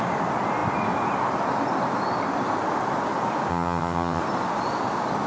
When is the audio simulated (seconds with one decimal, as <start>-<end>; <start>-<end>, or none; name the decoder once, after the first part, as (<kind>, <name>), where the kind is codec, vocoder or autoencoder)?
3.5-4.2 (vocoder, HiFi-GAN)